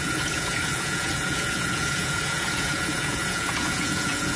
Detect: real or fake fake